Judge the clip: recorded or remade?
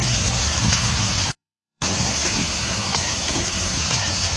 remade